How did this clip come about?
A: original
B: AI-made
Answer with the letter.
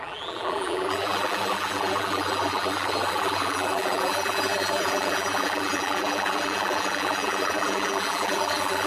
B